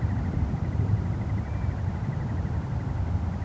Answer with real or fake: real